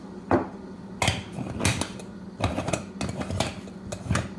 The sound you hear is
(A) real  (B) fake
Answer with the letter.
A